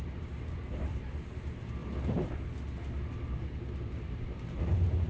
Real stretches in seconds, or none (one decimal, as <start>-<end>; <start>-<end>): 1.8-3.8